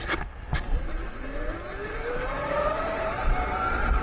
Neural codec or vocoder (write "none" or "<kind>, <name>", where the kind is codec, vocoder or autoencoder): none